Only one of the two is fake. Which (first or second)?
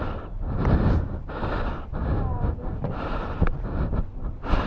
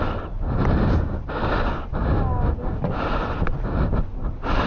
first